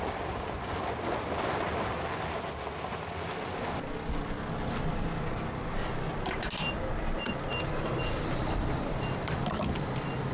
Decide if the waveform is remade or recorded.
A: recorded